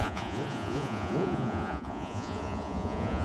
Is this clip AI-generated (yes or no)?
yes